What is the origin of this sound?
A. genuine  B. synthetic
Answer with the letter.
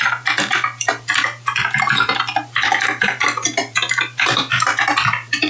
B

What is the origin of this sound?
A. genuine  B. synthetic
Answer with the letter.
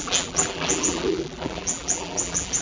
B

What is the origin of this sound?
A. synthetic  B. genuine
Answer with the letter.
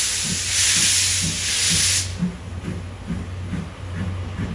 B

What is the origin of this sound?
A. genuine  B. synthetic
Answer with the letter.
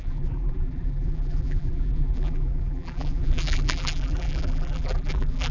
B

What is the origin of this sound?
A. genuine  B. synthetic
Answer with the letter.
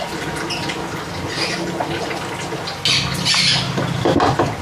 A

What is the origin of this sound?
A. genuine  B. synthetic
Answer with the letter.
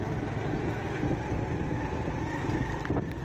A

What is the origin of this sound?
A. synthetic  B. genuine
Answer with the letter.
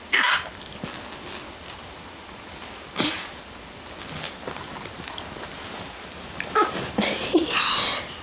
B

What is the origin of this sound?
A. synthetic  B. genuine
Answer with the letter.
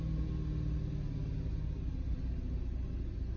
B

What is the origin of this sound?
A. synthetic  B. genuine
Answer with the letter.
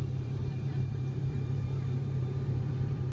A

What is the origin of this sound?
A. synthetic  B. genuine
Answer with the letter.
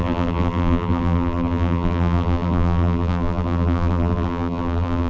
A